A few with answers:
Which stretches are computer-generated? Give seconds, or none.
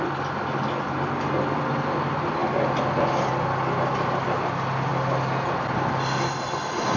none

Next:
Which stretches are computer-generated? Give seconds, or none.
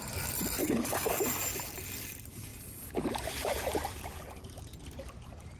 0.6-1.1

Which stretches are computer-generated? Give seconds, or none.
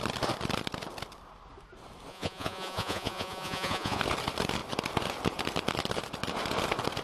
2.1-4.0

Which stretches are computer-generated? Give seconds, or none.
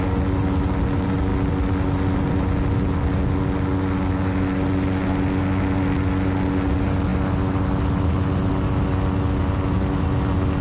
none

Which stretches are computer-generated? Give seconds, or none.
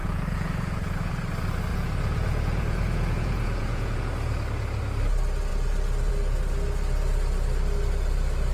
0.0-1.1; 1.7-4.0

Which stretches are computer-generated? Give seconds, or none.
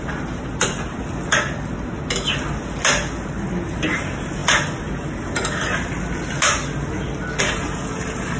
none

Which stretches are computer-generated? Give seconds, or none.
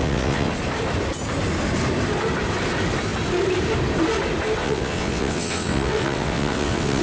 0.0-0.5; 4.6-7.0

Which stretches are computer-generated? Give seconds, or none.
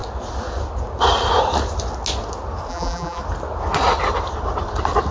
2.7-3.2